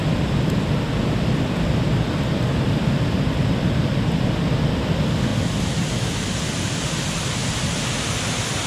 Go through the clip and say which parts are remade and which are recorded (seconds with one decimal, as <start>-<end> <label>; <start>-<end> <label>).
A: 0.0-8.7 recorded